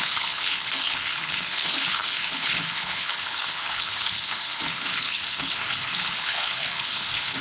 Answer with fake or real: fake